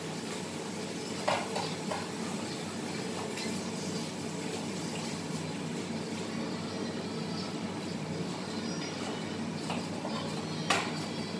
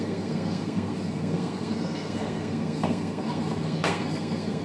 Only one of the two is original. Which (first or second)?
first